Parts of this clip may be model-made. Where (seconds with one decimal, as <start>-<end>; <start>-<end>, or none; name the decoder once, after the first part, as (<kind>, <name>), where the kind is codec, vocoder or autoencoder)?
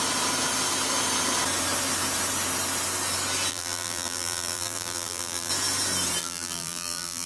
3.5-5.5 (vocoder, BigVGAN v2); 6.2-7.3